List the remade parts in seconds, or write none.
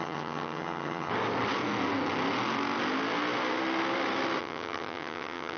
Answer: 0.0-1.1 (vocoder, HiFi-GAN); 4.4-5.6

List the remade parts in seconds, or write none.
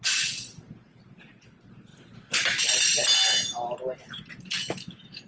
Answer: none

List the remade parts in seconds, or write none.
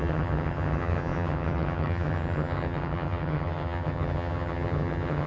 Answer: 0.0-5.3 (vocoder, HiFi-GAN)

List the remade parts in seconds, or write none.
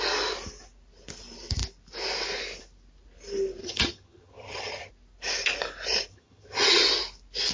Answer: 3.6-4.9 (vocoder, HiFi-GAN); 6.1-6.8